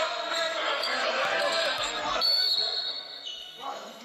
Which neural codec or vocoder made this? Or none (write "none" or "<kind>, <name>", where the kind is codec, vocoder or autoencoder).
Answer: codec, SNAC